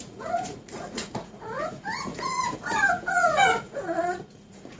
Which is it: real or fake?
fake